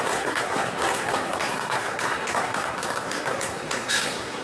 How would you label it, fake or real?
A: fake